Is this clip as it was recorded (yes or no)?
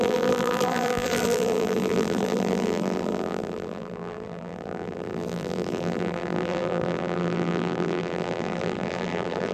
no